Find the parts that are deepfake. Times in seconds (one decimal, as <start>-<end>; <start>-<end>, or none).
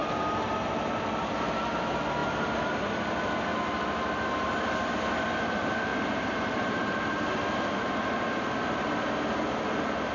5.9-7.9